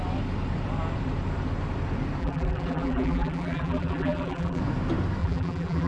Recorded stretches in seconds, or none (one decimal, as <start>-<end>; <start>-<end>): 0.0-2.2; 4.6-5.2